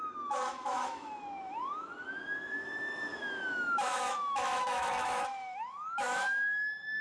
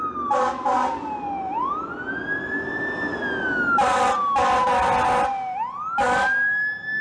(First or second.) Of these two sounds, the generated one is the first